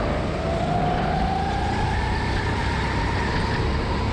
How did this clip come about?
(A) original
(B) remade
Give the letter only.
A